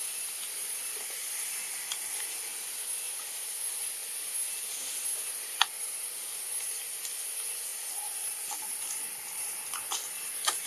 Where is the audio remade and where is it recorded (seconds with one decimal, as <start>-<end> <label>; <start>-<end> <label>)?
0.0-10.7 recorded